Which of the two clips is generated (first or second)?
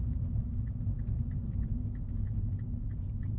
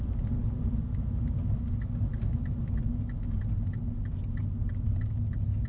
first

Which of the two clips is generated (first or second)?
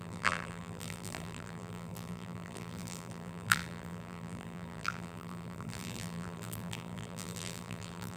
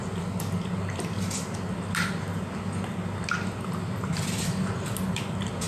first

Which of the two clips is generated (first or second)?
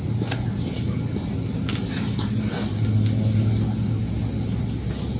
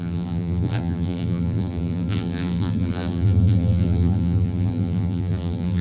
second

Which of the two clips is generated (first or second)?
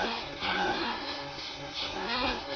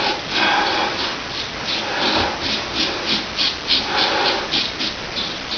first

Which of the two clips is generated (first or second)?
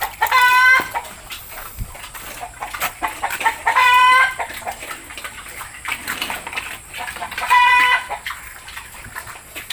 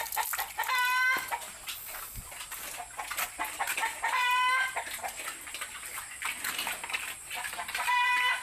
first